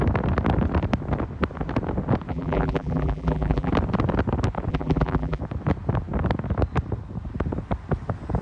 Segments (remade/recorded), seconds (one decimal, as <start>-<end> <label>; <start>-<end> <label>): 0.0-2.3 recorded; 2.3-3.7 remade; 3.7-4.7 recorded; 4.7-5.4 remade; 5.4-8.4 recorded